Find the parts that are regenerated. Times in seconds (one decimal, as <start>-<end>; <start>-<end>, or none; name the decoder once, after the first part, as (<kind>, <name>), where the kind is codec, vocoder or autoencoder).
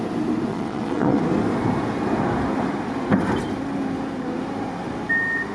0.5-1.2 (vocoder, Vocos)